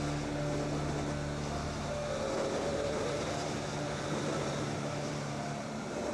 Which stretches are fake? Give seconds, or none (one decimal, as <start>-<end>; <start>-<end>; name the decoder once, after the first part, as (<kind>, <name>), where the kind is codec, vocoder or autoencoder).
2.7-6.1 (vocoder, BigVGAN v2)